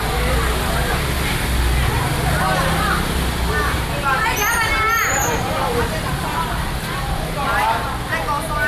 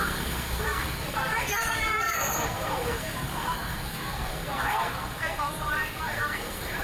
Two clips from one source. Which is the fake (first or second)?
second